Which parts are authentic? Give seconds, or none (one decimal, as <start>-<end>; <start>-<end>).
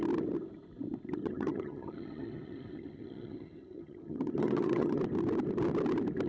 0.0-1.2; 5.0-6.3